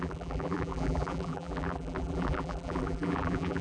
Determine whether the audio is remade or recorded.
remade